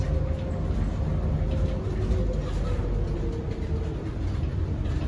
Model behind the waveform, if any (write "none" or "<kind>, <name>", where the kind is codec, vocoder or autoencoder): none